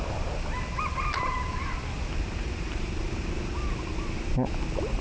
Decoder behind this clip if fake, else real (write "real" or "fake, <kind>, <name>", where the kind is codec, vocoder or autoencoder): real